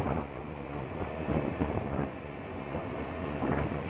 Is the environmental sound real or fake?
fake